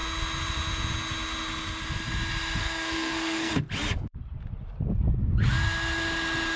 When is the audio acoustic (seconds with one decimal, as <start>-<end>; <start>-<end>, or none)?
0.0-2.6; 3.5-6.6